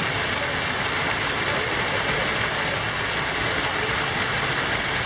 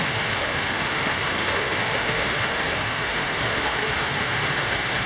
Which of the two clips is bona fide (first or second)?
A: first